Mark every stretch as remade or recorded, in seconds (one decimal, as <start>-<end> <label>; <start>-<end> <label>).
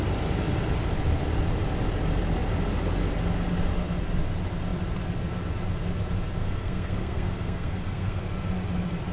0.0-6.4 recorded; 6.4-8.2 remade; 8.2-9.1 recorded